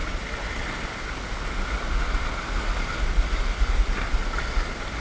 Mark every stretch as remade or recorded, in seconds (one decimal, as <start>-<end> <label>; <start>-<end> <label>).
0.0-5.0 recorded